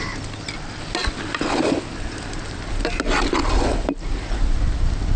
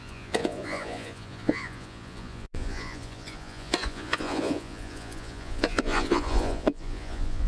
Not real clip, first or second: second